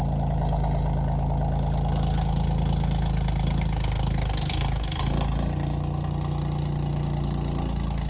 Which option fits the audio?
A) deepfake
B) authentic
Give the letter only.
B